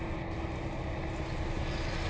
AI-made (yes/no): no